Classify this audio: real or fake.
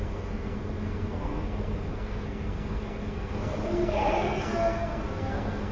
fake